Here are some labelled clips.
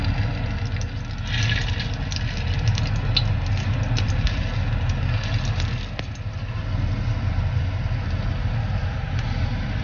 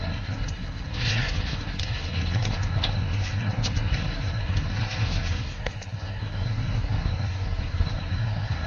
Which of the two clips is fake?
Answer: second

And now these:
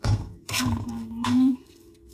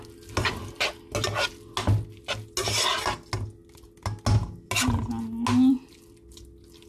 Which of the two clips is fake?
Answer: first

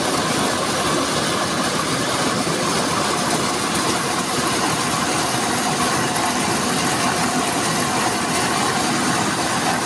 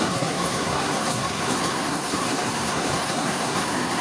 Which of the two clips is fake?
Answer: second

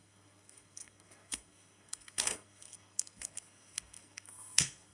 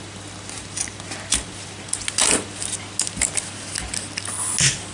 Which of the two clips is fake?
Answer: first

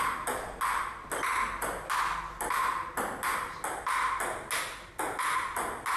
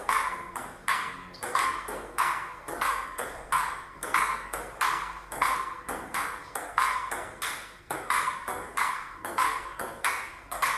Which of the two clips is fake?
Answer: second